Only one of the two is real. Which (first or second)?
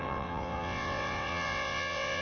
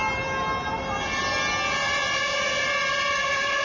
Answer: second